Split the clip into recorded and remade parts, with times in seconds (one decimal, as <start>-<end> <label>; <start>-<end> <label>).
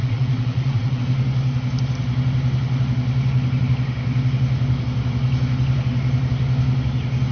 0.0-1.0 remade; 1.0-7.3 recorded